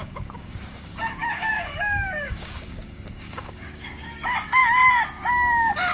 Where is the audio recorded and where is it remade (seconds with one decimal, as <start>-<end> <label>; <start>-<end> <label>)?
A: 0.0-4.6 remade; 4.6-5.3 recorded; 5.3-5.9 remade